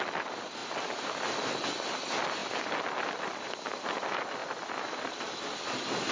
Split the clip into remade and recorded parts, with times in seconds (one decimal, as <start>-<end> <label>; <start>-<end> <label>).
0.0-6.1 recorded